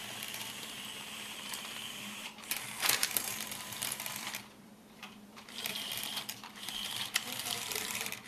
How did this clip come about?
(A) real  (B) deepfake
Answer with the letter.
B